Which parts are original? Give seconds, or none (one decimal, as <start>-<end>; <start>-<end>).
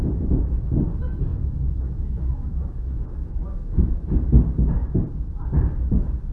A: 0.0-1.3; 3.8-6.3